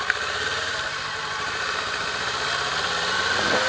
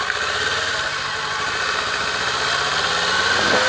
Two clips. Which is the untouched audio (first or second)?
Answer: second